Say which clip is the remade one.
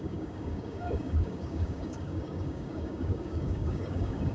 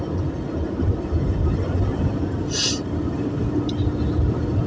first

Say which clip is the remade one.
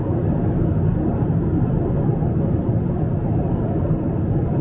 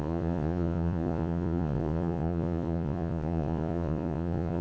second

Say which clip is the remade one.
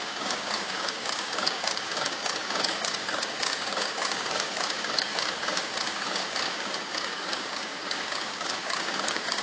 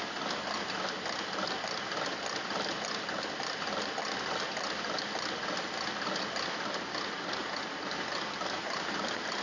first